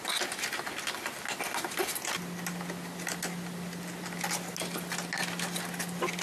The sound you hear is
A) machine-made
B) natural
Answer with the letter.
B